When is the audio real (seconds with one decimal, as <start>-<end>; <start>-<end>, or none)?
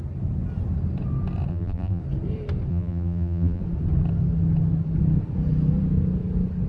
0.0-1.5; 2.0-2.7; 3.6-6.7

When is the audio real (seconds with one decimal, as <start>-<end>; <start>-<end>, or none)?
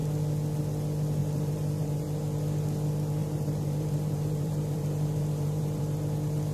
0.0-1.2; 2.2-3.2; 5.8-6.5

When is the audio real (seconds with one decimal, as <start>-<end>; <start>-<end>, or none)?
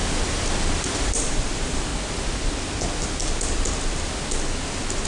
0.0-1.1; 1.9-5.1